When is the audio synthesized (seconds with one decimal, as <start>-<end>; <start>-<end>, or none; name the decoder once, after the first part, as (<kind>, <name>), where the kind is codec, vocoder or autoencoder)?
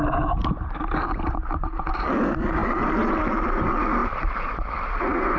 0.4-1.9 (vocoder, BigVGAN v2); 2.6-3.1